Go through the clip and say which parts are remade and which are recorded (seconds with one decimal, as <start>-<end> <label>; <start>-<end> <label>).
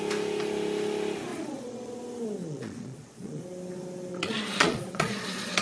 0.0-1.3 recorded; 1.3-2.0 remade; 2.0-2.4 recorded; 2.4-3.4 remade; 3.4-4.1 recorded; 4.1-5.6 remade